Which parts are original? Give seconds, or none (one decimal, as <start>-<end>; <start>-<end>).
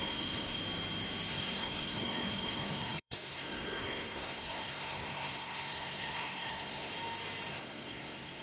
0.6-1.3; 6.9-7.5